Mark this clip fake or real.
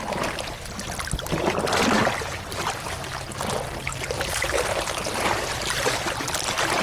real